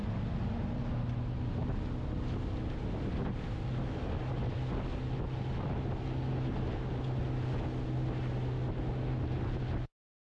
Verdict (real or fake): real